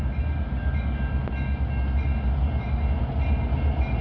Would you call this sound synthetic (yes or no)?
no